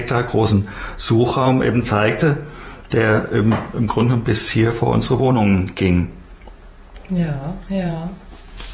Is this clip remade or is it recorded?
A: remade